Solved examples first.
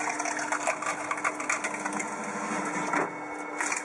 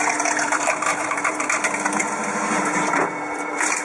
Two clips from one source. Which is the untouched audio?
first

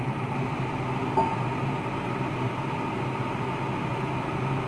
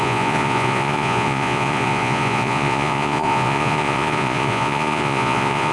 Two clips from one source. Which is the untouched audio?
first